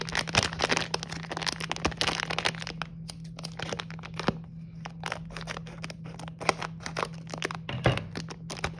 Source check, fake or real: real